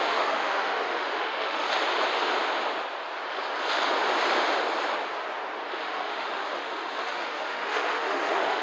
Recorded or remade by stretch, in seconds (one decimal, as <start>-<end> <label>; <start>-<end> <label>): 0.0-1.7 remade; 1.7-5.7 recorded; 5.7-8.6 remade